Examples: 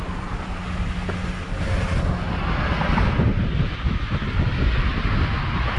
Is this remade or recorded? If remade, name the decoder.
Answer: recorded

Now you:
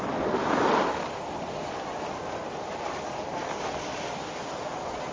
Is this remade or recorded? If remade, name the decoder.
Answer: recorded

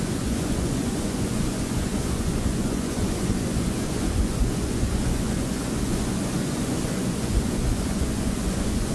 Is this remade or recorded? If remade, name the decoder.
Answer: remade, vocoder, Vocos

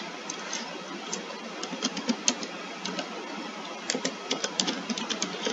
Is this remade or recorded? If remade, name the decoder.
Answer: recorded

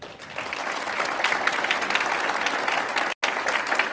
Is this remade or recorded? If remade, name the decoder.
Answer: recorded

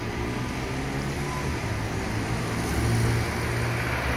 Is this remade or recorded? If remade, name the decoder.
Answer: recorded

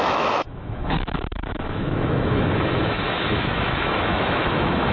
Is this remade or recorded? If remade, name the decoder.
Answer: remade, autoencoder, DAC-VAE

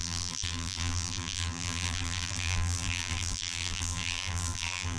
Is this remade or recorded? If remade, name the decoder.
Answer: remade, vocoder, BigVGAN v2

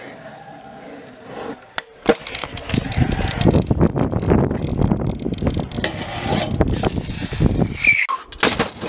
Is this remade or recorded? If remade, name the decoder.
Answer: recorded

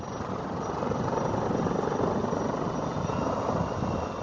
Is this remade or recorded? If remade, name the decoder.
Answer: recorded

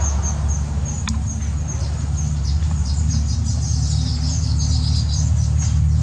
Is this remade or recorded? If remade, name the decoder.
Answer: recorded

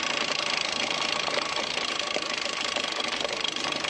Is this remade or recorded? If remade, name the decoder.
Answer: recorded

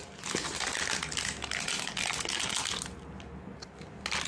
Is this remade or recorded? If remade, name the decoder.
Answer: recorded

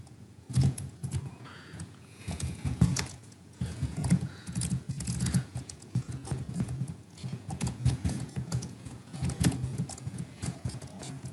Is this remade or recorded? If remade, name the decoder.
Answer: remade, vocoder, Vocos